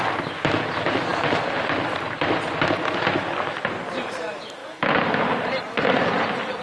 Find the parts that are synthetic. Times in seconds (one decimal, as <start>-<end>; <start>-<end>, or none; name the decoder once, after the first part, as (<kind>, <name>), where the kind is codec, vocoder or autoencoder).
4.6-5.6 (vocoder, BigVGAN v2)